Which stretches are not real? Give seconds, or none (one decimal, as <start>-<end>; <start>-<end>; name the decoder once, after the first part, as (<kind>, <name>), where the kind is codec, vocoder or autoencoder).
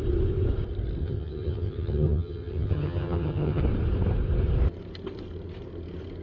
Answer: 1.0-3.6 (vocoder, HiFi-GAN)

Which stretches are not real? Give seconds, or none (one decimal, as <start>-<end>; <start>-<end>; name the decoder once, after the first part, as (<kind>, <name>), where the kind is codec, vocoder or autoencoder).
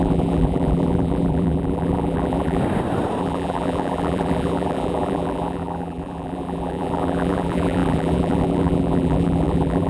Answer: 0.0-2.6 (vocoder, BigVGAN v2); 3.2-9.9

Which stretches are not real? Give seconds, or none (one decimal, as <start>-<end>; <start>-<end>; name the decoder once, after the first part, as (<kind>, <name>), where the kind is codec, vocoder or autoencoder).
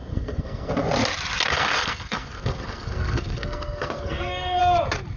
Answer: 0.0-0.7 (codec, SNAC); 1.5-4.6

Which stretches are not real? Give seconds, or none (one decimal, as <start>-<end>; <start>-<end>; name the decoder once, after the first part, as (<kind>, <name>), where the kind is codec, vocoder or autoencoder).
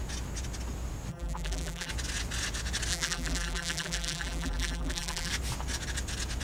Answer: 1.1-1.9 (vocoder, BigVGAN v2); 2.9-5.3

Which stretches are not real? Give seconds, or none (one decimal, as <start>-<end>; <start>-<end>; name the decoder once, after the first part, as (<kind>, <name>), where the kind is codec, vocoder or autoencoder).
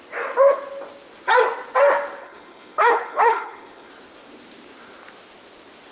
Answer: 2.2-3.9 (codec, HILCodec)